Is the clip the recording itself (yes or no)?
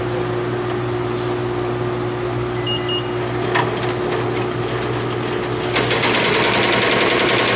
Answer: yes